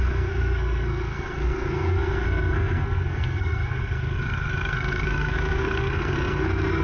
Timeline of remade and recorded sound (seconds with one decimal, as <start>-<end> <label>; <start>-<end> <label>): 0.0-6.8 remade